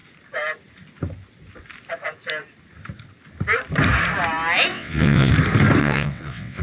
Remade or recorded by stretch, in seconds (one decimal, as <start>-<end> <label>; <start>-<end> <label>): 0.0-4.7 recorded; 4.7-5.3 remade; 5.3-5.8 recorded; 5.8-6.6 remade